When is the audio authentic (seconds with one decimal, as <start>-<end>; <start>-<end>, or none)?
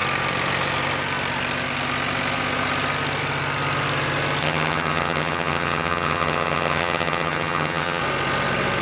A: 0.0-4.4; 8.0-8.8